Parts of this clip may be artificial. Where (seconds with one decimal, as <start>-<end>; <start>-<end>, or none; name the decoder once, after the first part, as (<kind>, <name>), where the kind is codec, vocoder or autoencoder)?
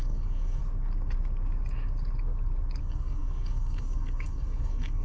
0.0-0.6 (codec, DAC); 2.8-5.0